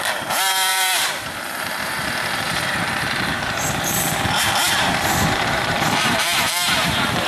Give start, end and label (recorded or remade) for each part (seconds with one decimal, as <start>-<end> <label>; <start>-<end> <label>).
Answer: 0.0-7.3 remade